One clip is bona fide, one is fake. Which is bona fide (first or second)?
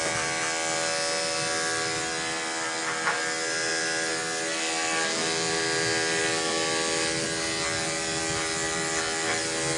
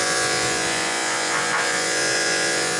first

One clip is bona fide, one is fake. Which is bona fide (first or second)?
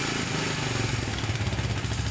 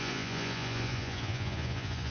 first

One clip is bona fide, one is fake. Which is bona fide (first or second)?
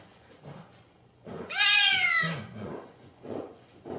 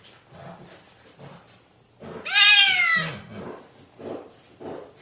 second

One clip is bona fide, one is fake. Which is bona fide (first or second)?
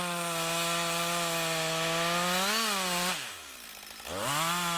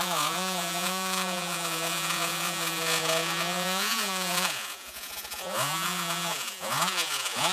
first